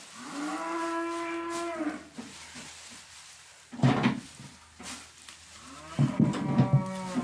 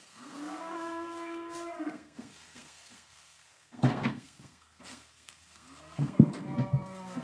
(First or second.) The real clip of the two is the first